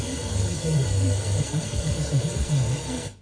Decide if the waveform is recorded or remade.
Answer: remade